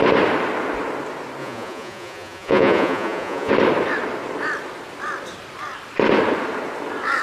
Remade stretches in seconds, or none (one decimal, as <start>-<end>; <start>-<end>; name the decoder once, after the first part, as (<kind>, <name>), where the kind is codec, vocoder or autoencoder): 1.4-3.5 (vocoder, Vocos)

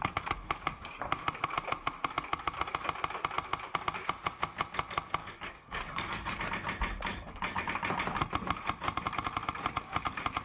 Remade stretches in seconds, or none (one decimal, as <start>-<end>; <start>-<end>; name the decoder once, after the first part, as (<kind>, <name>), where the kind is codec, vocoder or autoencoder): 5.2-6.4 (codec, DAC); 7.1-7.6

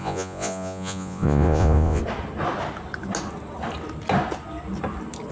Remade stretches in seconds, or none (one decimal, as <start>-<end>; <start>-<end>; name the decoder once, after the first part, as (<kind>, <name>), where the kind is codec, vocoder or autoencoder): 0.0-2.0 (vocoder, Vocos)

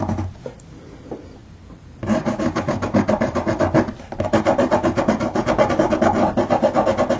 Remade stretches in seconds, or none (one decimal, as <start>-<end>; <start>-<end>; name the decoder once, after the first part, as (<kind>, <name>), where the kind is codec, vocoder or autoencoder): 1.4-5.7 (vocoder, BigVGAN v2)

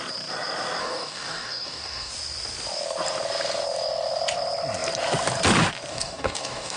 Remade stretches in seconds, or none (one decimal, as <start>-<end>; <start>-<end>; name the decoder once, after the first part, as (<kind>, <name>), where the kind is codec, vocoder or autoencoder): 0.8-2.1 (codec, DAC); 5.9-6.8

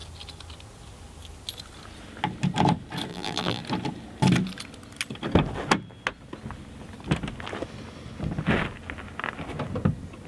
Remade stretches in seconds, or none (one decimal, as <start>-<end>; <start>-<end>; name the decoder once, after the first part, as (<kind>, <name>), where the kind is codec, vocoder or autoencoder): 3.1-3.6 (vocoder, BigVGAN v2)

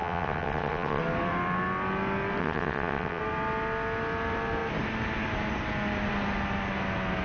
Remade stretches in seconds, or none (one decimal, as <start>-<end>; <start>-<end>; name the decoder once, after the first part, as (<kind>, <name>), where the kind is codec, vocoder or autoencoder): 0.0-1.0 (vocoder, WaveNeXt); 2.4-3.2

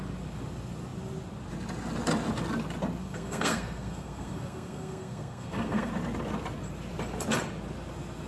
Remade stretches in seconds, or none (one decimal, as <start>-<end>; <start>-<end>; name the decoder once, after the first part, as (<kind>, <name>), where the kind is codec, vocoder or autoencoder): 3.0-5.9 (codec, SNAC)